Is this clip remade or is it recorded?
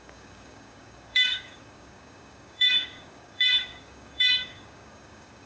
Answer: remade